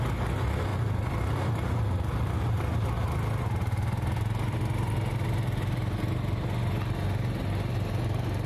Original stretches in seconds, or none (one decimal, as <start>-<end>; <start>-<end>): 0.0-8.5